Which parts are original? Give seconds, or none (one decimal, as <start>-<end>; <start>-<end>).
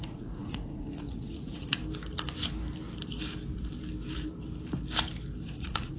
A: 1.8-5.4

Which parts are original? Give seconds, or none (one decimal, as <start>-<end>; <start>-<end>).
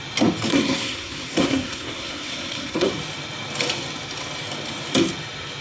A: 0.0-0.5; 2.9-5.6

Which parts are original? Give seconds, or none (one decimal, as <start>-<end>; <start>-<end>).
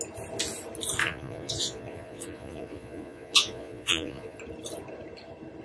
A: 0.0-1.0; 4.4-5.6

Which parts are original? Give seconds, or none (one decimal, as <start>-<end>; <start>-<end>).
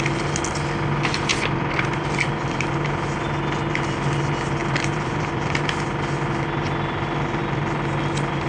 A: 0.0-1.3; 2.7-4.6; 5.9-8.5